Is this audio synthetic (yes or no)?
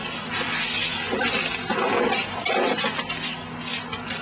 no